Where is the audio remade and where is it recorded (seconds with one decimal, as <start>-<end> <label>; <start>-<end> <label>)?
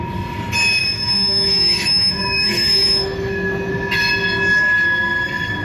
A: 0.0-0.8 recorded; 0.8-3.7 remade; 3.7-5.6 recorded